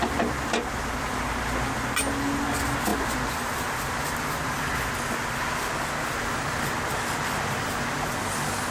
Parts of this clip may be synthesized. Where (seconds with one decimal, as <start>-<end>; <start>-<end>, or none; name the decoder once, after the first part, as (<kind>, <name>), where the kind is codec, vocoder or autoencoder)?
none